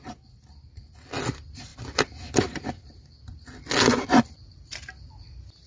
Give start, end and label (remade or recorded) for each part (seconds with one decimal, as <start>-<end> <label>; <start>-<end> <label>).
0.0-5.7 recorded